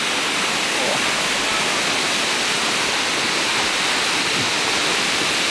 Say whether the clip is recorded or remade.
recorded